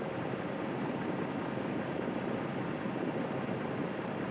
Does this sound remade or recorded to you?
recorded